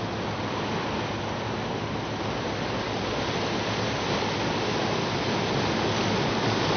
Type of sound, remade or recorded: recorded